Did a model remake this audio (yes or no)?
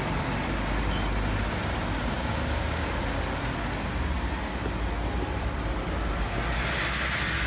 no